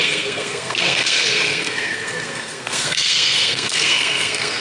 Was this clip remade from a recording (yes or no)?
yes